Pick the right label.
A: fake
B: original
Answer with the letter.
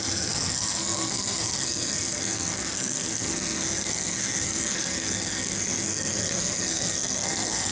A